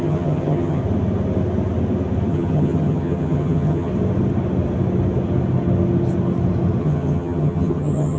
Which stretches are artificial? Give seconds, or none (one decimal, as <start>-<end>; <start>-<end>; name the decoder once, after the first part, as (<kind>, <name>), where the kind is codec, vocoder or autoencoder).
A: 0.0-0.8 (vocoder, HiFi-GAN); 2.3-3.9; 6.8-8.2